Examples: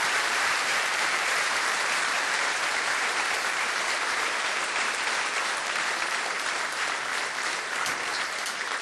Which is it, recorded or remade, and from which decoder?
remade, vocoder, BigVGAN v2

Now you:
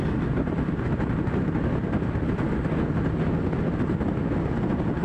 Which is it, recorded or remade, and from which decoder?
recorded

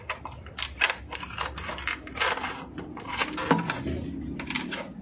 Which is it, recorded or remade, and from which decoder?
recorded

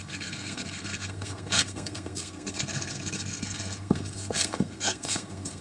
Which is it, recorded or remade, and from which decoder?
remade, codec, SNAC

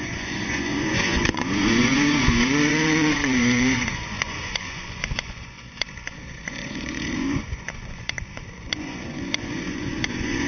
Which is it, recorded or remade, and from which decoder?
remade, vocoder, Vocos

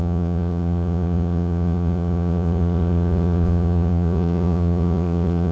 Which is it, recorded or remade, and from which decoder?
remade, vocoder, Vocos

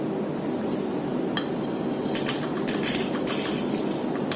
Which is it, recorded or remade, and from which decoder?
recorded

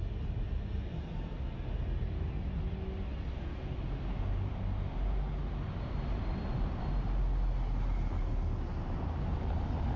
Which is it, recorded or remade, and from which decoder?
recorded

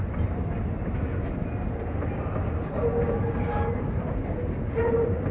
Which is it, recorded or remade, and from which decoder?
recorded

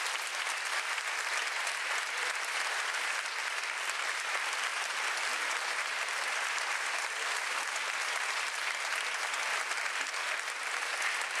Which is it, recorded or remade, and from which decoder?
recorded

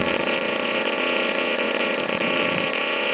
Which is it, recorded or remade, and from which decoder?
remade, vocoder, Vocos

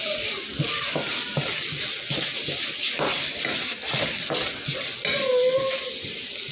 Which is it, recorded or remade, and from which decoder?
recorded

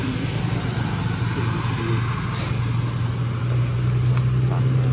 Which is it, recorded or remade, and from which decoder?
recorded